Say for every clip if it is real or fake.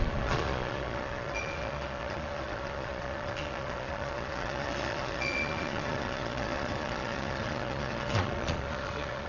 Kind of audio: fake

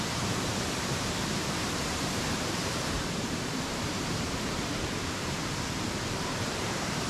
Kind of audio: fake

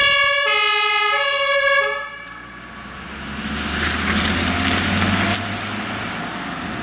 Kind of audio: real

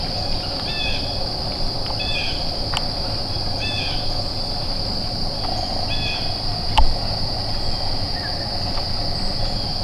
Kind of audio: real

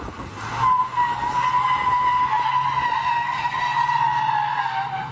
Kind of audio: real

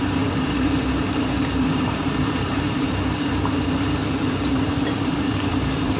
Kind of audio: fake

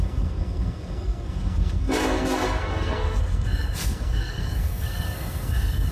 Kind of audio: fake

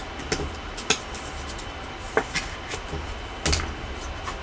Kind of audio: real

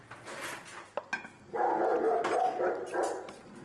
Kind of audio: real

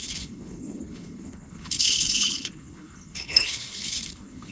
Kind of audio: fake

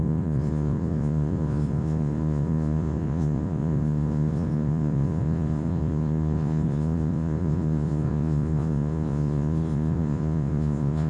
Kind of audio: fake